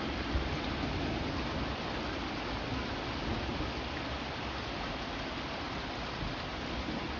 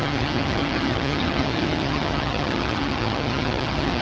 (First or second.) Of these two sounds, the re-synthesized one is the second